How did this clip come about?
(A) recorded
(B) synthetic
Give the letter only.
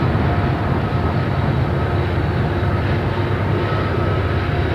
A